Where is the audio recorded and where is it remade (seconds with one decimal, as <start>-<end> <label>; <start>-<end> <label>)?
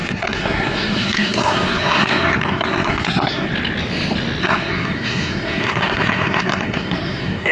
0.0-3.5 remade; 3.5-4.4 recorded; 4.4-7.5 remade